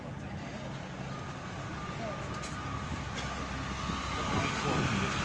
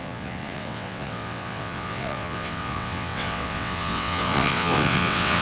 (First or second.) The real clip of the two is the first